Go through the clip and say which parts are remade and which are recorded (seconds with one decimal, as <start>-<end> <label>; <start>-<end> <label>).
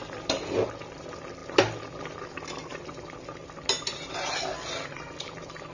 0.0-5.7 recorded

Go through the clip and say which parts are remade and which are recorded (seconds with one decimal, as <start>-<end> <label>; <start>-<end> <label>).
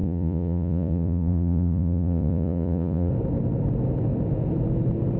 0.0-3.1 remade; 3.1-5.2 recorded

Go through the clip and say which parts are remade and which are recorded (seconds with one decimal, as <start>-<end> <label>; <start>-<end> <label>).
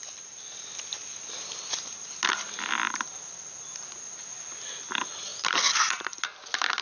0.0-2.8 recorded; 2.8-4.8 remade; 4.8-5.3 recorded; 5.3-6.0 remade; 6.0-6.8 recorded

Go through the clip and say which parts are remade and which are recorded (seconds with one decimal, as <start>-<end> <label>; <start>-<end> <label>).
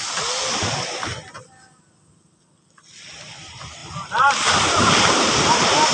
0.0-5.9 recorded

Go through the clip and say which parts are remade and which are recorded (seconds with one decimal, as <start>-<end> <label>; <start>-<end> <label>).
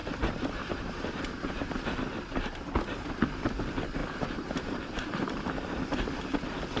0.0-1.5 remade; 1.5-4.0 recorded; 4.0-5.5 remade; 5.5-6.8 recorded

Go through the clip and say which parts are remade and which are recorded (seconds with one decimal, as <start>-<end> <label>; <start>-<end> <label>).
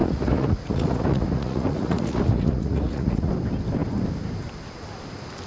0.0-3.3 remade; 3.3-5.5 recorded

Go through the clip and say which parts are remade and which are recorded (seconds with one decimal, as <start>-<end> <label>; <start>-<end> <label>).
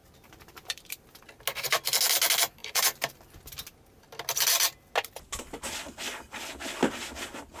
0.0-1.0 remade; 1.0-2.6 recorded; 2.6-3.2 remade; 3.2-7.6 recorded